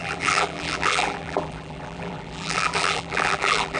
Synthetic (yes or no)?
yes